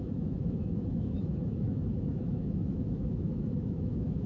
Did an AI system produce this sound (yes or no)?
yes